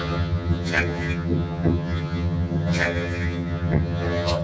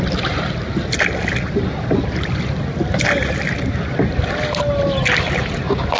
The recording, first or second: second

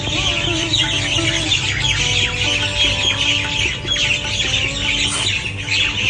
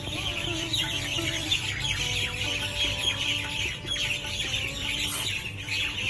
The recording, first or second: first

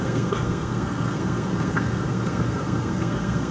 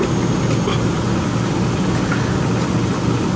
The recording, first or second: second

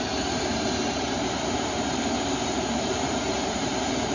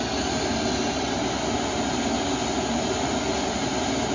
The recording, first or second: second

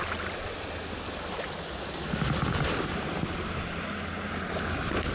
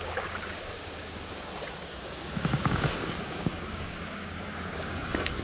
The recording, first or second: first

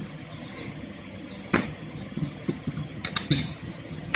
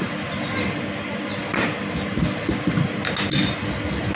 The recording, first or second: second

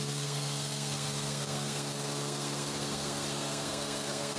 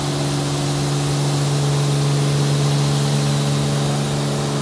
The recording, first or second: second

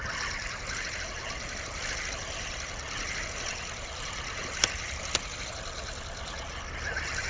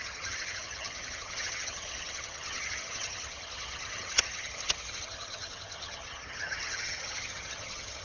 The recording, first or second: first